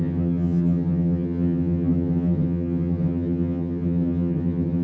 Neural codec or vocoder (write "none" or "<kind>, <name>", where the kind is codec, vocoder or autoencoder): vocoder, HiFi-GAN